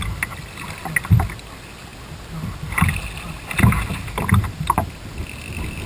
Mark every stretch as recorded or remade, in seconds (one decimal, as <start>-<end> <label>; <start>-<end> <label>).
0.0-5.9 recorded